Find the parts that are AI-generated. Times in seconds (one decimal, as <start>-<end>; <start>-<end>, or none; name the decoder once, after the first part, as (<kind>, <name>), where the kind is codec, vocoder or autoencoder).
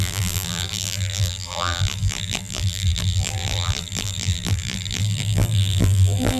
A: 0.0-6.4 (vocoder, BigVGAN v2)